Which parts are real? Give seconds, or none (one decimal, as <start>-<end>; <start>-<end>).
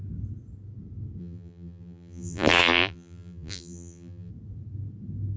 0.0-1.2; 4.3-5.4